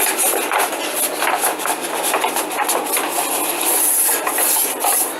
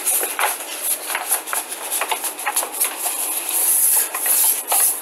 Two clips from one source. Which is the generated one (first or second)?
second